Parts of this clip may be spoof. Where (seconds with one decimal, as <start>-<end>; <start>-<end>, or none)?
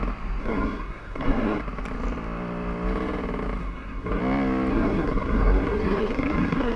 0.4-1.6; 3.6-4.2; 4.7-6.8